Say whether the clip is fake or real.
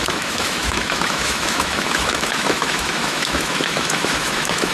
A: fake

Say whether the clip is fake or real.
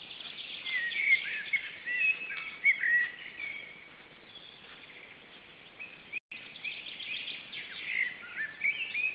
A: real